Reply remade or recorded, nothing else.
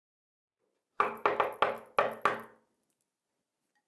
recorded